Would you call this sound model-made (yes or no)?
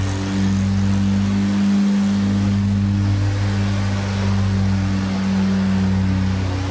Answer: no